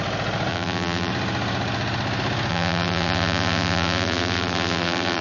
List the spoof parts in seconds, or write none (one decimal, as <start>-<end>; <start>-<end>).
0.5-1.1; 2.5-5.2